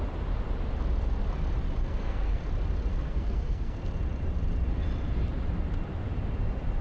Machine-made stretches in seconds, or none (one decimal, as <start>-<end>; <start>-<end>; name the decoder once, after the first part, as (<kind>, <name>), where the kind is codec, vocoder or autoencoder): 1.8-2.4 (codec, SNAC); 2.9-3.8